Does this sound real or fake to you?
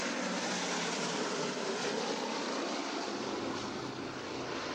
real